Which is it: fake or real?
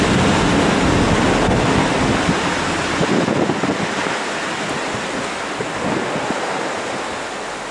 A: real